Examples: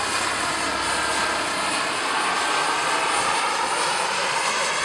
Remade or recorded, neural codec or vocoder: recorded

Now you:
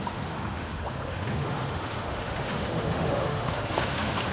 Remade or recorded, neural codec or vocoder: remade, autoencoder, DAC-VAE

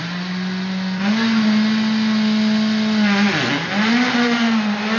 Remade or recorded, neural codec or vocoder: recorded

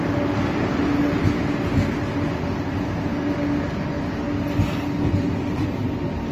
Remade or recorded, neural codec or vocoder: recorded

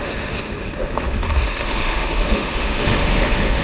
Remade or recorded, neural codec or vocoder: remade, autoencoder, DAC-VAE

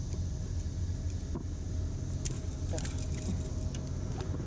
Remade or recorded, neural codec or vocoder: recorded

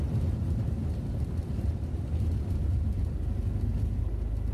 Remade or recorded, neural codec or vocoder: recorded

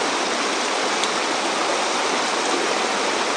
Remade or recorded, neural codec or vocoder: recorded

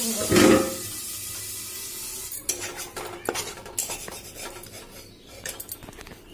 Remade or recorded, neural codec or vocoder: recorded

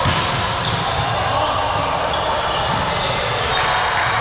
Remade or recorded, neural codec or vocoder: recorded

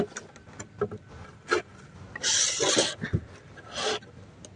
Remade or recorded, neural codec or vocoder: recorded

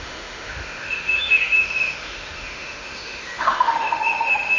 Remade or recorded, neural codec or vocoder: remade, autoencoder, DAC-VAE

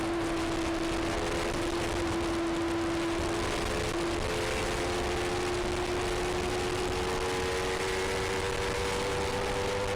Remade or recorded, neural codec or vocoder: recorded